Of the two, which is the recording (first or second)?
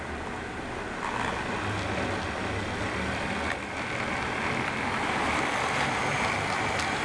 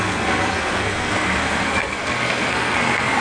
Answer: first